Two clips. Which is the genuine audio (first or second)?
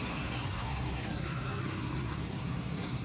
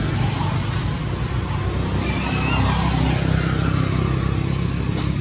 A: second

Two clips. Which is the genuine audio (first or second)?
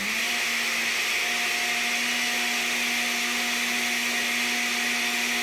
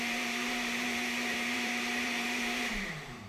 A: first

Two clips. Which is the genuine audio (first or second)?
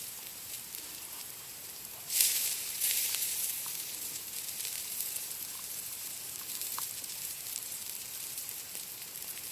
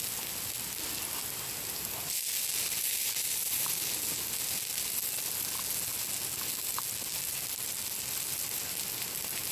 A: second